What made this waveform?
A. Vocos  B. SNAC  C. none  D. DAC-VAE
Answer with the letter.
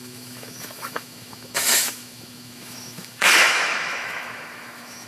D